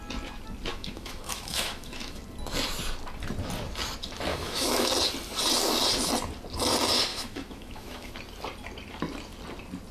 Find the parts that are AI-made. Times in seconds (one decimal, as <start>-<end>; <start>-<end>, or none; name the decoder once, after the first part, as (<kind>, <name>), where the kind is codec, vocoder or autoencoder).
0.7-2.2 (autoencoder, DAC-VAE); 4.3-4.9; 7.1-8.1

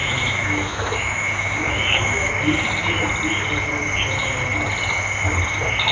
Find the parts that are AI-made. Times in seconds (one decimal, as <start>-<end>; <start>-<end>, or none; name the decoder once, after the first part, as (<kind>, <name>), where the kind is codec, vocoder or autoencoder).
0.0-2.3 (autoencoder, DAC-VAE)